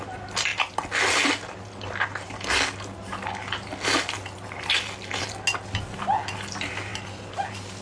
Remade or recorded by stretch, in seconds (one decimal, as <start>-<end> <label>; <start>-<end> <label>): 0.0-7.8 recorded